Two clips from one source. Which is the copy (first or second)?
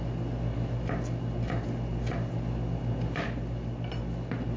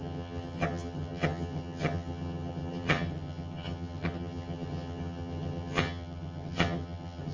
second